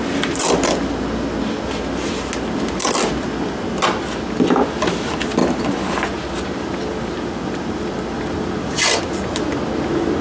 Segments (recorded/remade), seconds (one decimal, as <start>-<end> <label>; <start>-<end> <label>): 0.0-10.2 recorded